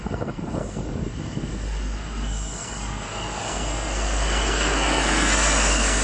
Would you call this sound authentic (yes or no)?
no